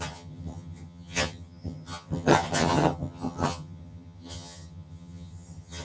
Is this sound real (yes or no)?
no